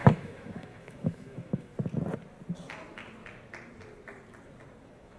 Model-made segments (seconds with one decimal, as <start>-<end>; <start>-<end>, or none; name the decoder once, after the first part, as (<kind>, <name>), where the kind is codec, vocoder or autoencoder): 0.0-1.7 (autoencoder, DAC-VAE); 4.8-5.2